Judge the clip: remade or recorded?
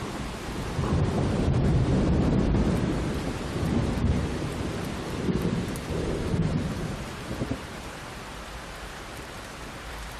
remade